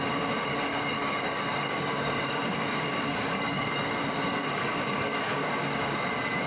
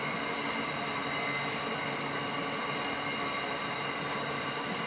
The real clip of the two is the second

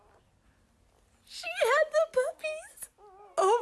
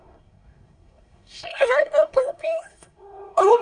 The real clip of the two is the first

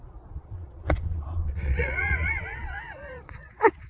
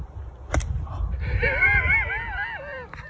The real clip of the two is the second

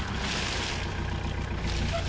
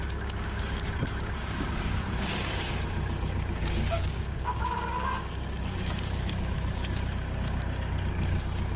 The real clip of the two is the first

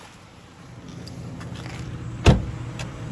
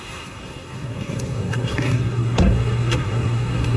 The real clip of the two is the first